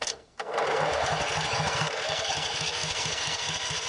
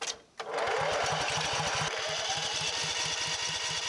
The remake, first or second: first